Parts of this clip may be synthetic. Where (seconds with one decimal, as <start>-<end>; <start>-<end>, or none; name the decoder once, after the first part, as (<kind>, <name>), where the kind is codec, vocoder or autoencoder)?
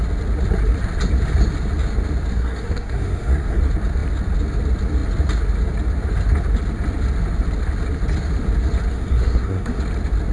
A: 2.3-3.6 (codec, SNAC); 8.9-9.8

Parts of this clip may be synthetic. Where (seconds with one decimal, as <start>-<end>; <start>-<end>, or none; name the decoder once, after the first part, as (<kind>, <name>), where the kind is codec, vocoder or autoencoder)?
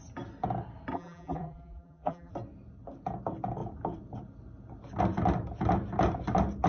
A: 0.9-2.3 (vocoder, BigVGAN v2)